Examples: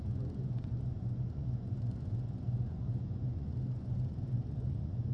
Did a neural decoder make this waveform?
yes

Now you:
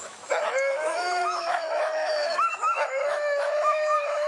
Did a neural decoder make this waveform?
yes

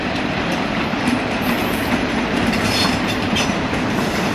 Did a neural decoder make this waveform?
yes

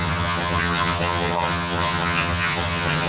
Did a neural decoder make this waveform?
yes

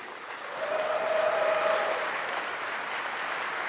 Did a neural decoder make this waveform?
no